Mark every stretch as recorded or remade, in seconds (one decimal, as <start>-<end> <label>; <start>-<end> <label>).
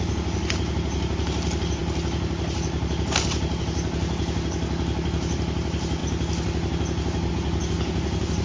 0.0-8.4 recorded